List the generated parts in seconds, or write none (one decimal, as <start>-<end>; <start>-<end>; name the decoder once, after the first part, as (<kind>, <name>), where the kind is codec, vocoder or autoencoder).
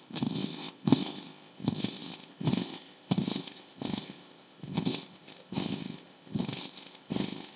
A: 0.0-7.6 (codec, ZipCodec)